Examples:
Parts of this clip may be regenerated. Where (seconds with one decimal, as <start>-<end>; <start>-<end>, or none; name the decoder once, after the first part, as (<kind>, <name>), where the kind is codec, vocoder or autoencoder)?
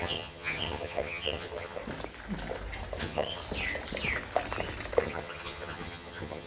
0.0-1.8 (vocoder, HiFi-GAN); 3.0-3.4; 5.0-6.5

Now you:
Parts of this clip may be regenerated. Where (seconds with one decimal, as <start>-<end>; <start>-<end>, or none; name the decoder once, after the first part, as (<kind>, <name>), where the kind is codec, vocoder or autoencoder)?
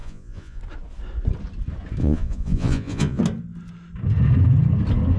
0.0-0.6 (vocoder, Vocos); 2.0-3.2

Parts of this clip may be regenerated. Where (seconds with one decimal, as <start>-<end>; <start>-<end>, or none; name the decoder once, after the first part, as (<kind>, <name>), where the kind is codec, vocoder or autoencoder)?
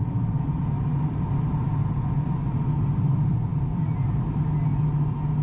3.5-4.4 (vocoder, BigVGAN v2)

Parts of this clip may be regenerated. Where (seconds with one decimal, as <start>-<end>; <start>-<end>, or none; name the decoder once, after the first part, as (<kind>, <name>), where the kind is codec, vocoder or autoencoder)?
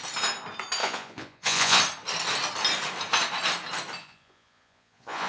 0.8-1.8 (vocoder, Vocos); 4.0-5.3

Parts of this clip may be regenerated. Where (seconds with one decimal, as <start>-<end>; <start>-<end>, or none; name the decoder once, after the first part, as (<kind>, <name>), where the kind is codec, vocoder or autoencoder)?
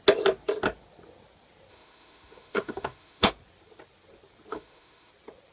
1.7-3.3 (autoencoder, DAC-VAE); 4.5-5.1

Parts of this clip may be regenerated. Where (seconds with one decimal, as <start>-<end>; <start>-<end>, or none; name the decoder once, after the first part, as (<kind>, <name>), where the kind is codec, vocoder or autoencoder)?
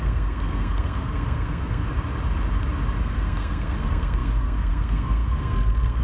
0.0-1.9 (codec, SNAC); 3.0-6.0